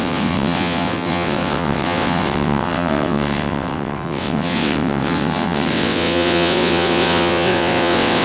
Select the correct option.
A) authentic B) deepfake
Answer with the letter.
B